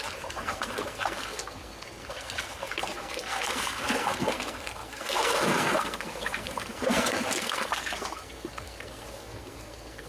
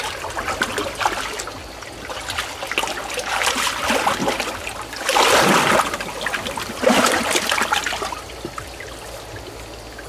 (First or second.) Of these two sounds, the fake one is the first